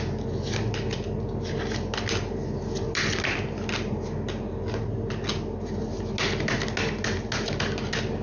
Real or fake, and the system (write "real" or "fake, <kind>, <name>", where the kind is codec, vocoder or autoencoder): real